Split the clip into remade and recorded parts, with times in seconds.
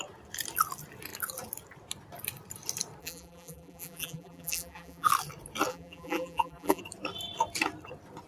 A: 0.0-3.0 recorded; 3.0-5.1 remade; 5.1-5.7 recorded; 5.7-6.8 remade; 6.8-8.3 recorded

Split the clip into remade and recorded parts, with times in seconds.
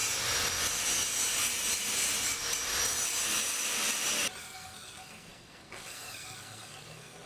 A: 0.0-4.4 recorded; 4.4-7.3 remade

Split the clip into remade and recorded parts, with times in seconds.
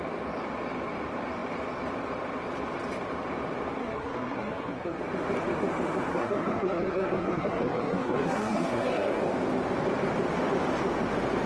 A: 0.0-3.8 recorded; 3.8-5.0 remade; 5.0-6.1 recorded; 6.1-9.2 remade; 9.2-11.5 recorded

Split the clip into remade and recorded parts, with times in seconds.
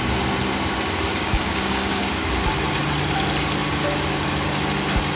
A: 0.0-1.1 recorded; 1.1-2.1 remade; 2.1-5.2 recorded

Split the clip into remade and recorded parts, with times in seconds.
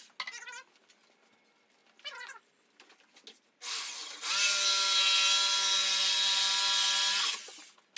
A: 0.0-8.0 recorded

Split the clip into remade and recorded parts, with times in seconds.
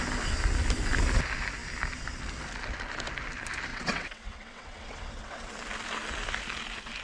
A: 0.0-3.7 recorded; 3.7-5.5 remade; 5.5-7.0 recorded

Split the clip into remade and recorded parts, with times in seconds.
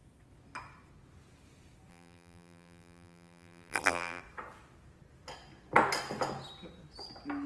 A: 0.0-1.9 recorded; 1.9-4.2 remade; 4.2-7.5 recorded